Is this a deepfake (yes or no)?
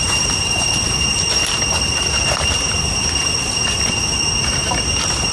no